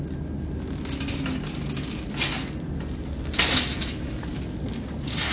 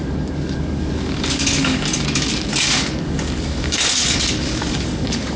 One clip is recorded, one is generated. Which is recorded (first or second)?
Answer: first